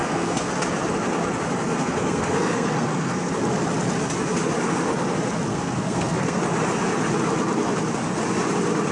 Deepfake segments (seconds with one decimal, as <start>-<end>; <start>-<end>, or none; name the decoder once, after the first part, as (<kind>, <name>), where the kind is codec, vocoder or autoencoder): 0.0-0.5 (codec, SNAC); 1.6-3.3; 5.5-6.4